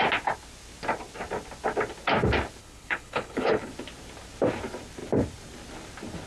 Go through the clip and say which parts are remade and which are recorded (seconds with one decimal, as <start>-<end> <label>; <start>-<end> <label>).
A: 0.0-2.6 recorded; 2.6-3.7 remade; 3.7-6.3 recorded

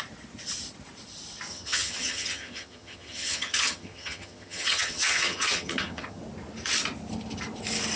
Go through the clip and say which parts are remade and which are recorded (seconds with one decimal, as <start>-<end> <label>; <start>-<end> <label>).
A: 0.0-1.5 recorded; 1.5-6.2 remade; 6.2-8.0 recorded

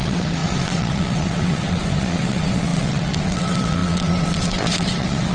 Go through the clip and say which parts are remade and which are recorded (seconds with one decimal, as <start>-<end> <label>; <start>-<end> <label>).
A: 0.0-5.3 remade